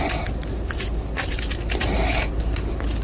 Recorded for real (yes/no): yes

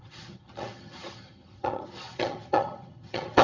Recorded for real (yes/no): no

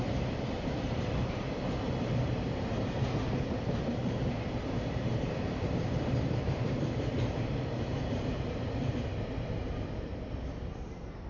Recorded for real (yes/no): no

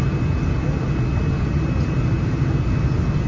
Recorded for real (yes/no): yes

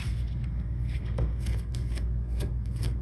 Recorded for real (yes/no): no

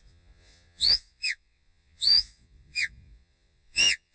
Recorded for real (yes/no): no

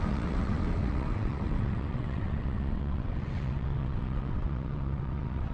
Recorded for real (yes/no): no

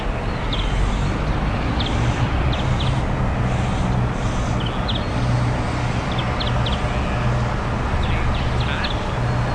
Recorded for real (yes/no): yes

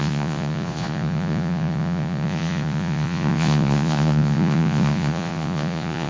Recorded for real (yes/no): no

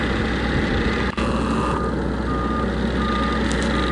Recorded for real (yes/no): yes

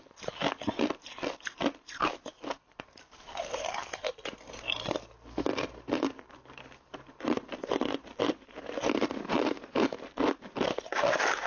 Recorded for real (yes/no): yes